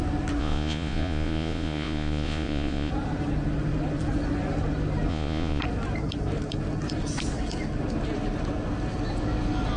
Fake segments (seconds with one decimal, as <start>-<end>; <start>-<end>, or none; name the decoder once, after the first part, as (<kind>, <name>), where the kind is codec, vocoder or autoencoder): 0.4-2.9 (vocoder, Vocos); 5.1-5.6